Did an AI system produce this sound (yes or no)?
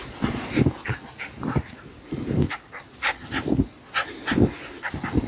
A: no